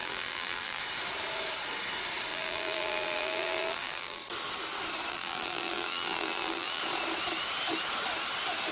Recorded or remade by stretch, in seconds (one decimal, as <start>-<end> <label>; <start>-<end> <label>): 0.0-0.8 remade; 0.8-2.3 recorded; 2.3-4.2 remade; 4.2-5.1 recorded; 5.1-6.8 remade; 6.8-8.7 recorded